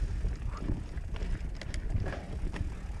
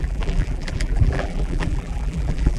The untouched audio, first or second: first